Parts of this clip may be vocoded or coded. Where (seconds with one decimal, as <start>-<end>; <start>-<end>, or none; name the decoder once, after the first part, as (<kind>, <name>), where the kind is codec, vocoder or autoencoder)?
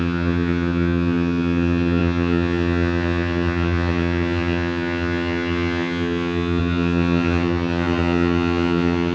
0.0-9.1 (vocoder, HiFi-GAN)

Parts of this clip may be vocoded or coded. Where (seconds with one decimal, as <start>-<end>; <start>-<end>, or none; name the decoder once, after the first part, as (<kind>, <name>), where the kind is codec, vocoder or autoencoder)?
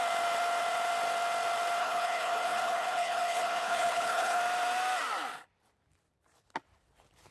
1.8-4.4 (codec, HILCodec)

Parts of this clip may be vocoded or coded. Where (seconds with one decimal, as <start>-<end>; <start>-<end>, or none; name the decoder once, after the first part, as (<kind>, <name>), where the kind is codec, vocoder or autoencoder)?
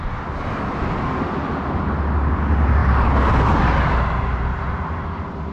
none